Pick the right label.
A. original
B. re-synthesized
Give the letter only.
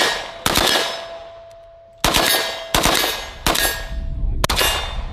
A